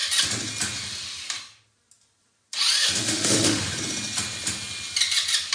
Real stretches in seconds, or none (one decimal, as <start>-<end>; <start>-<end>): 0.0-2.8; 3.6-5.5